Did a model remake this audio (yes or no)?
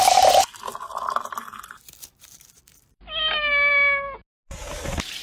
no